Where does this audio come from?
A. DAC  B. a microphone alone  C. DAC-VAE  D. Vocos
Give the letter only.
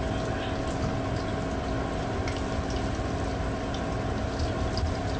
B